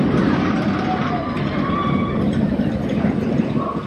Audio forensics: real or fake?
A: real